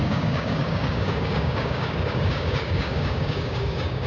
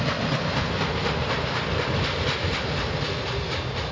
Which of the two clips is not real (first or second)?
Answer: first